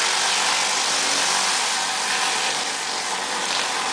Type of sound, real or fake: real